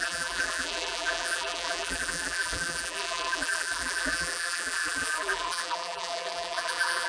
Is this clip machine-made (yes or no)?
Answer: yes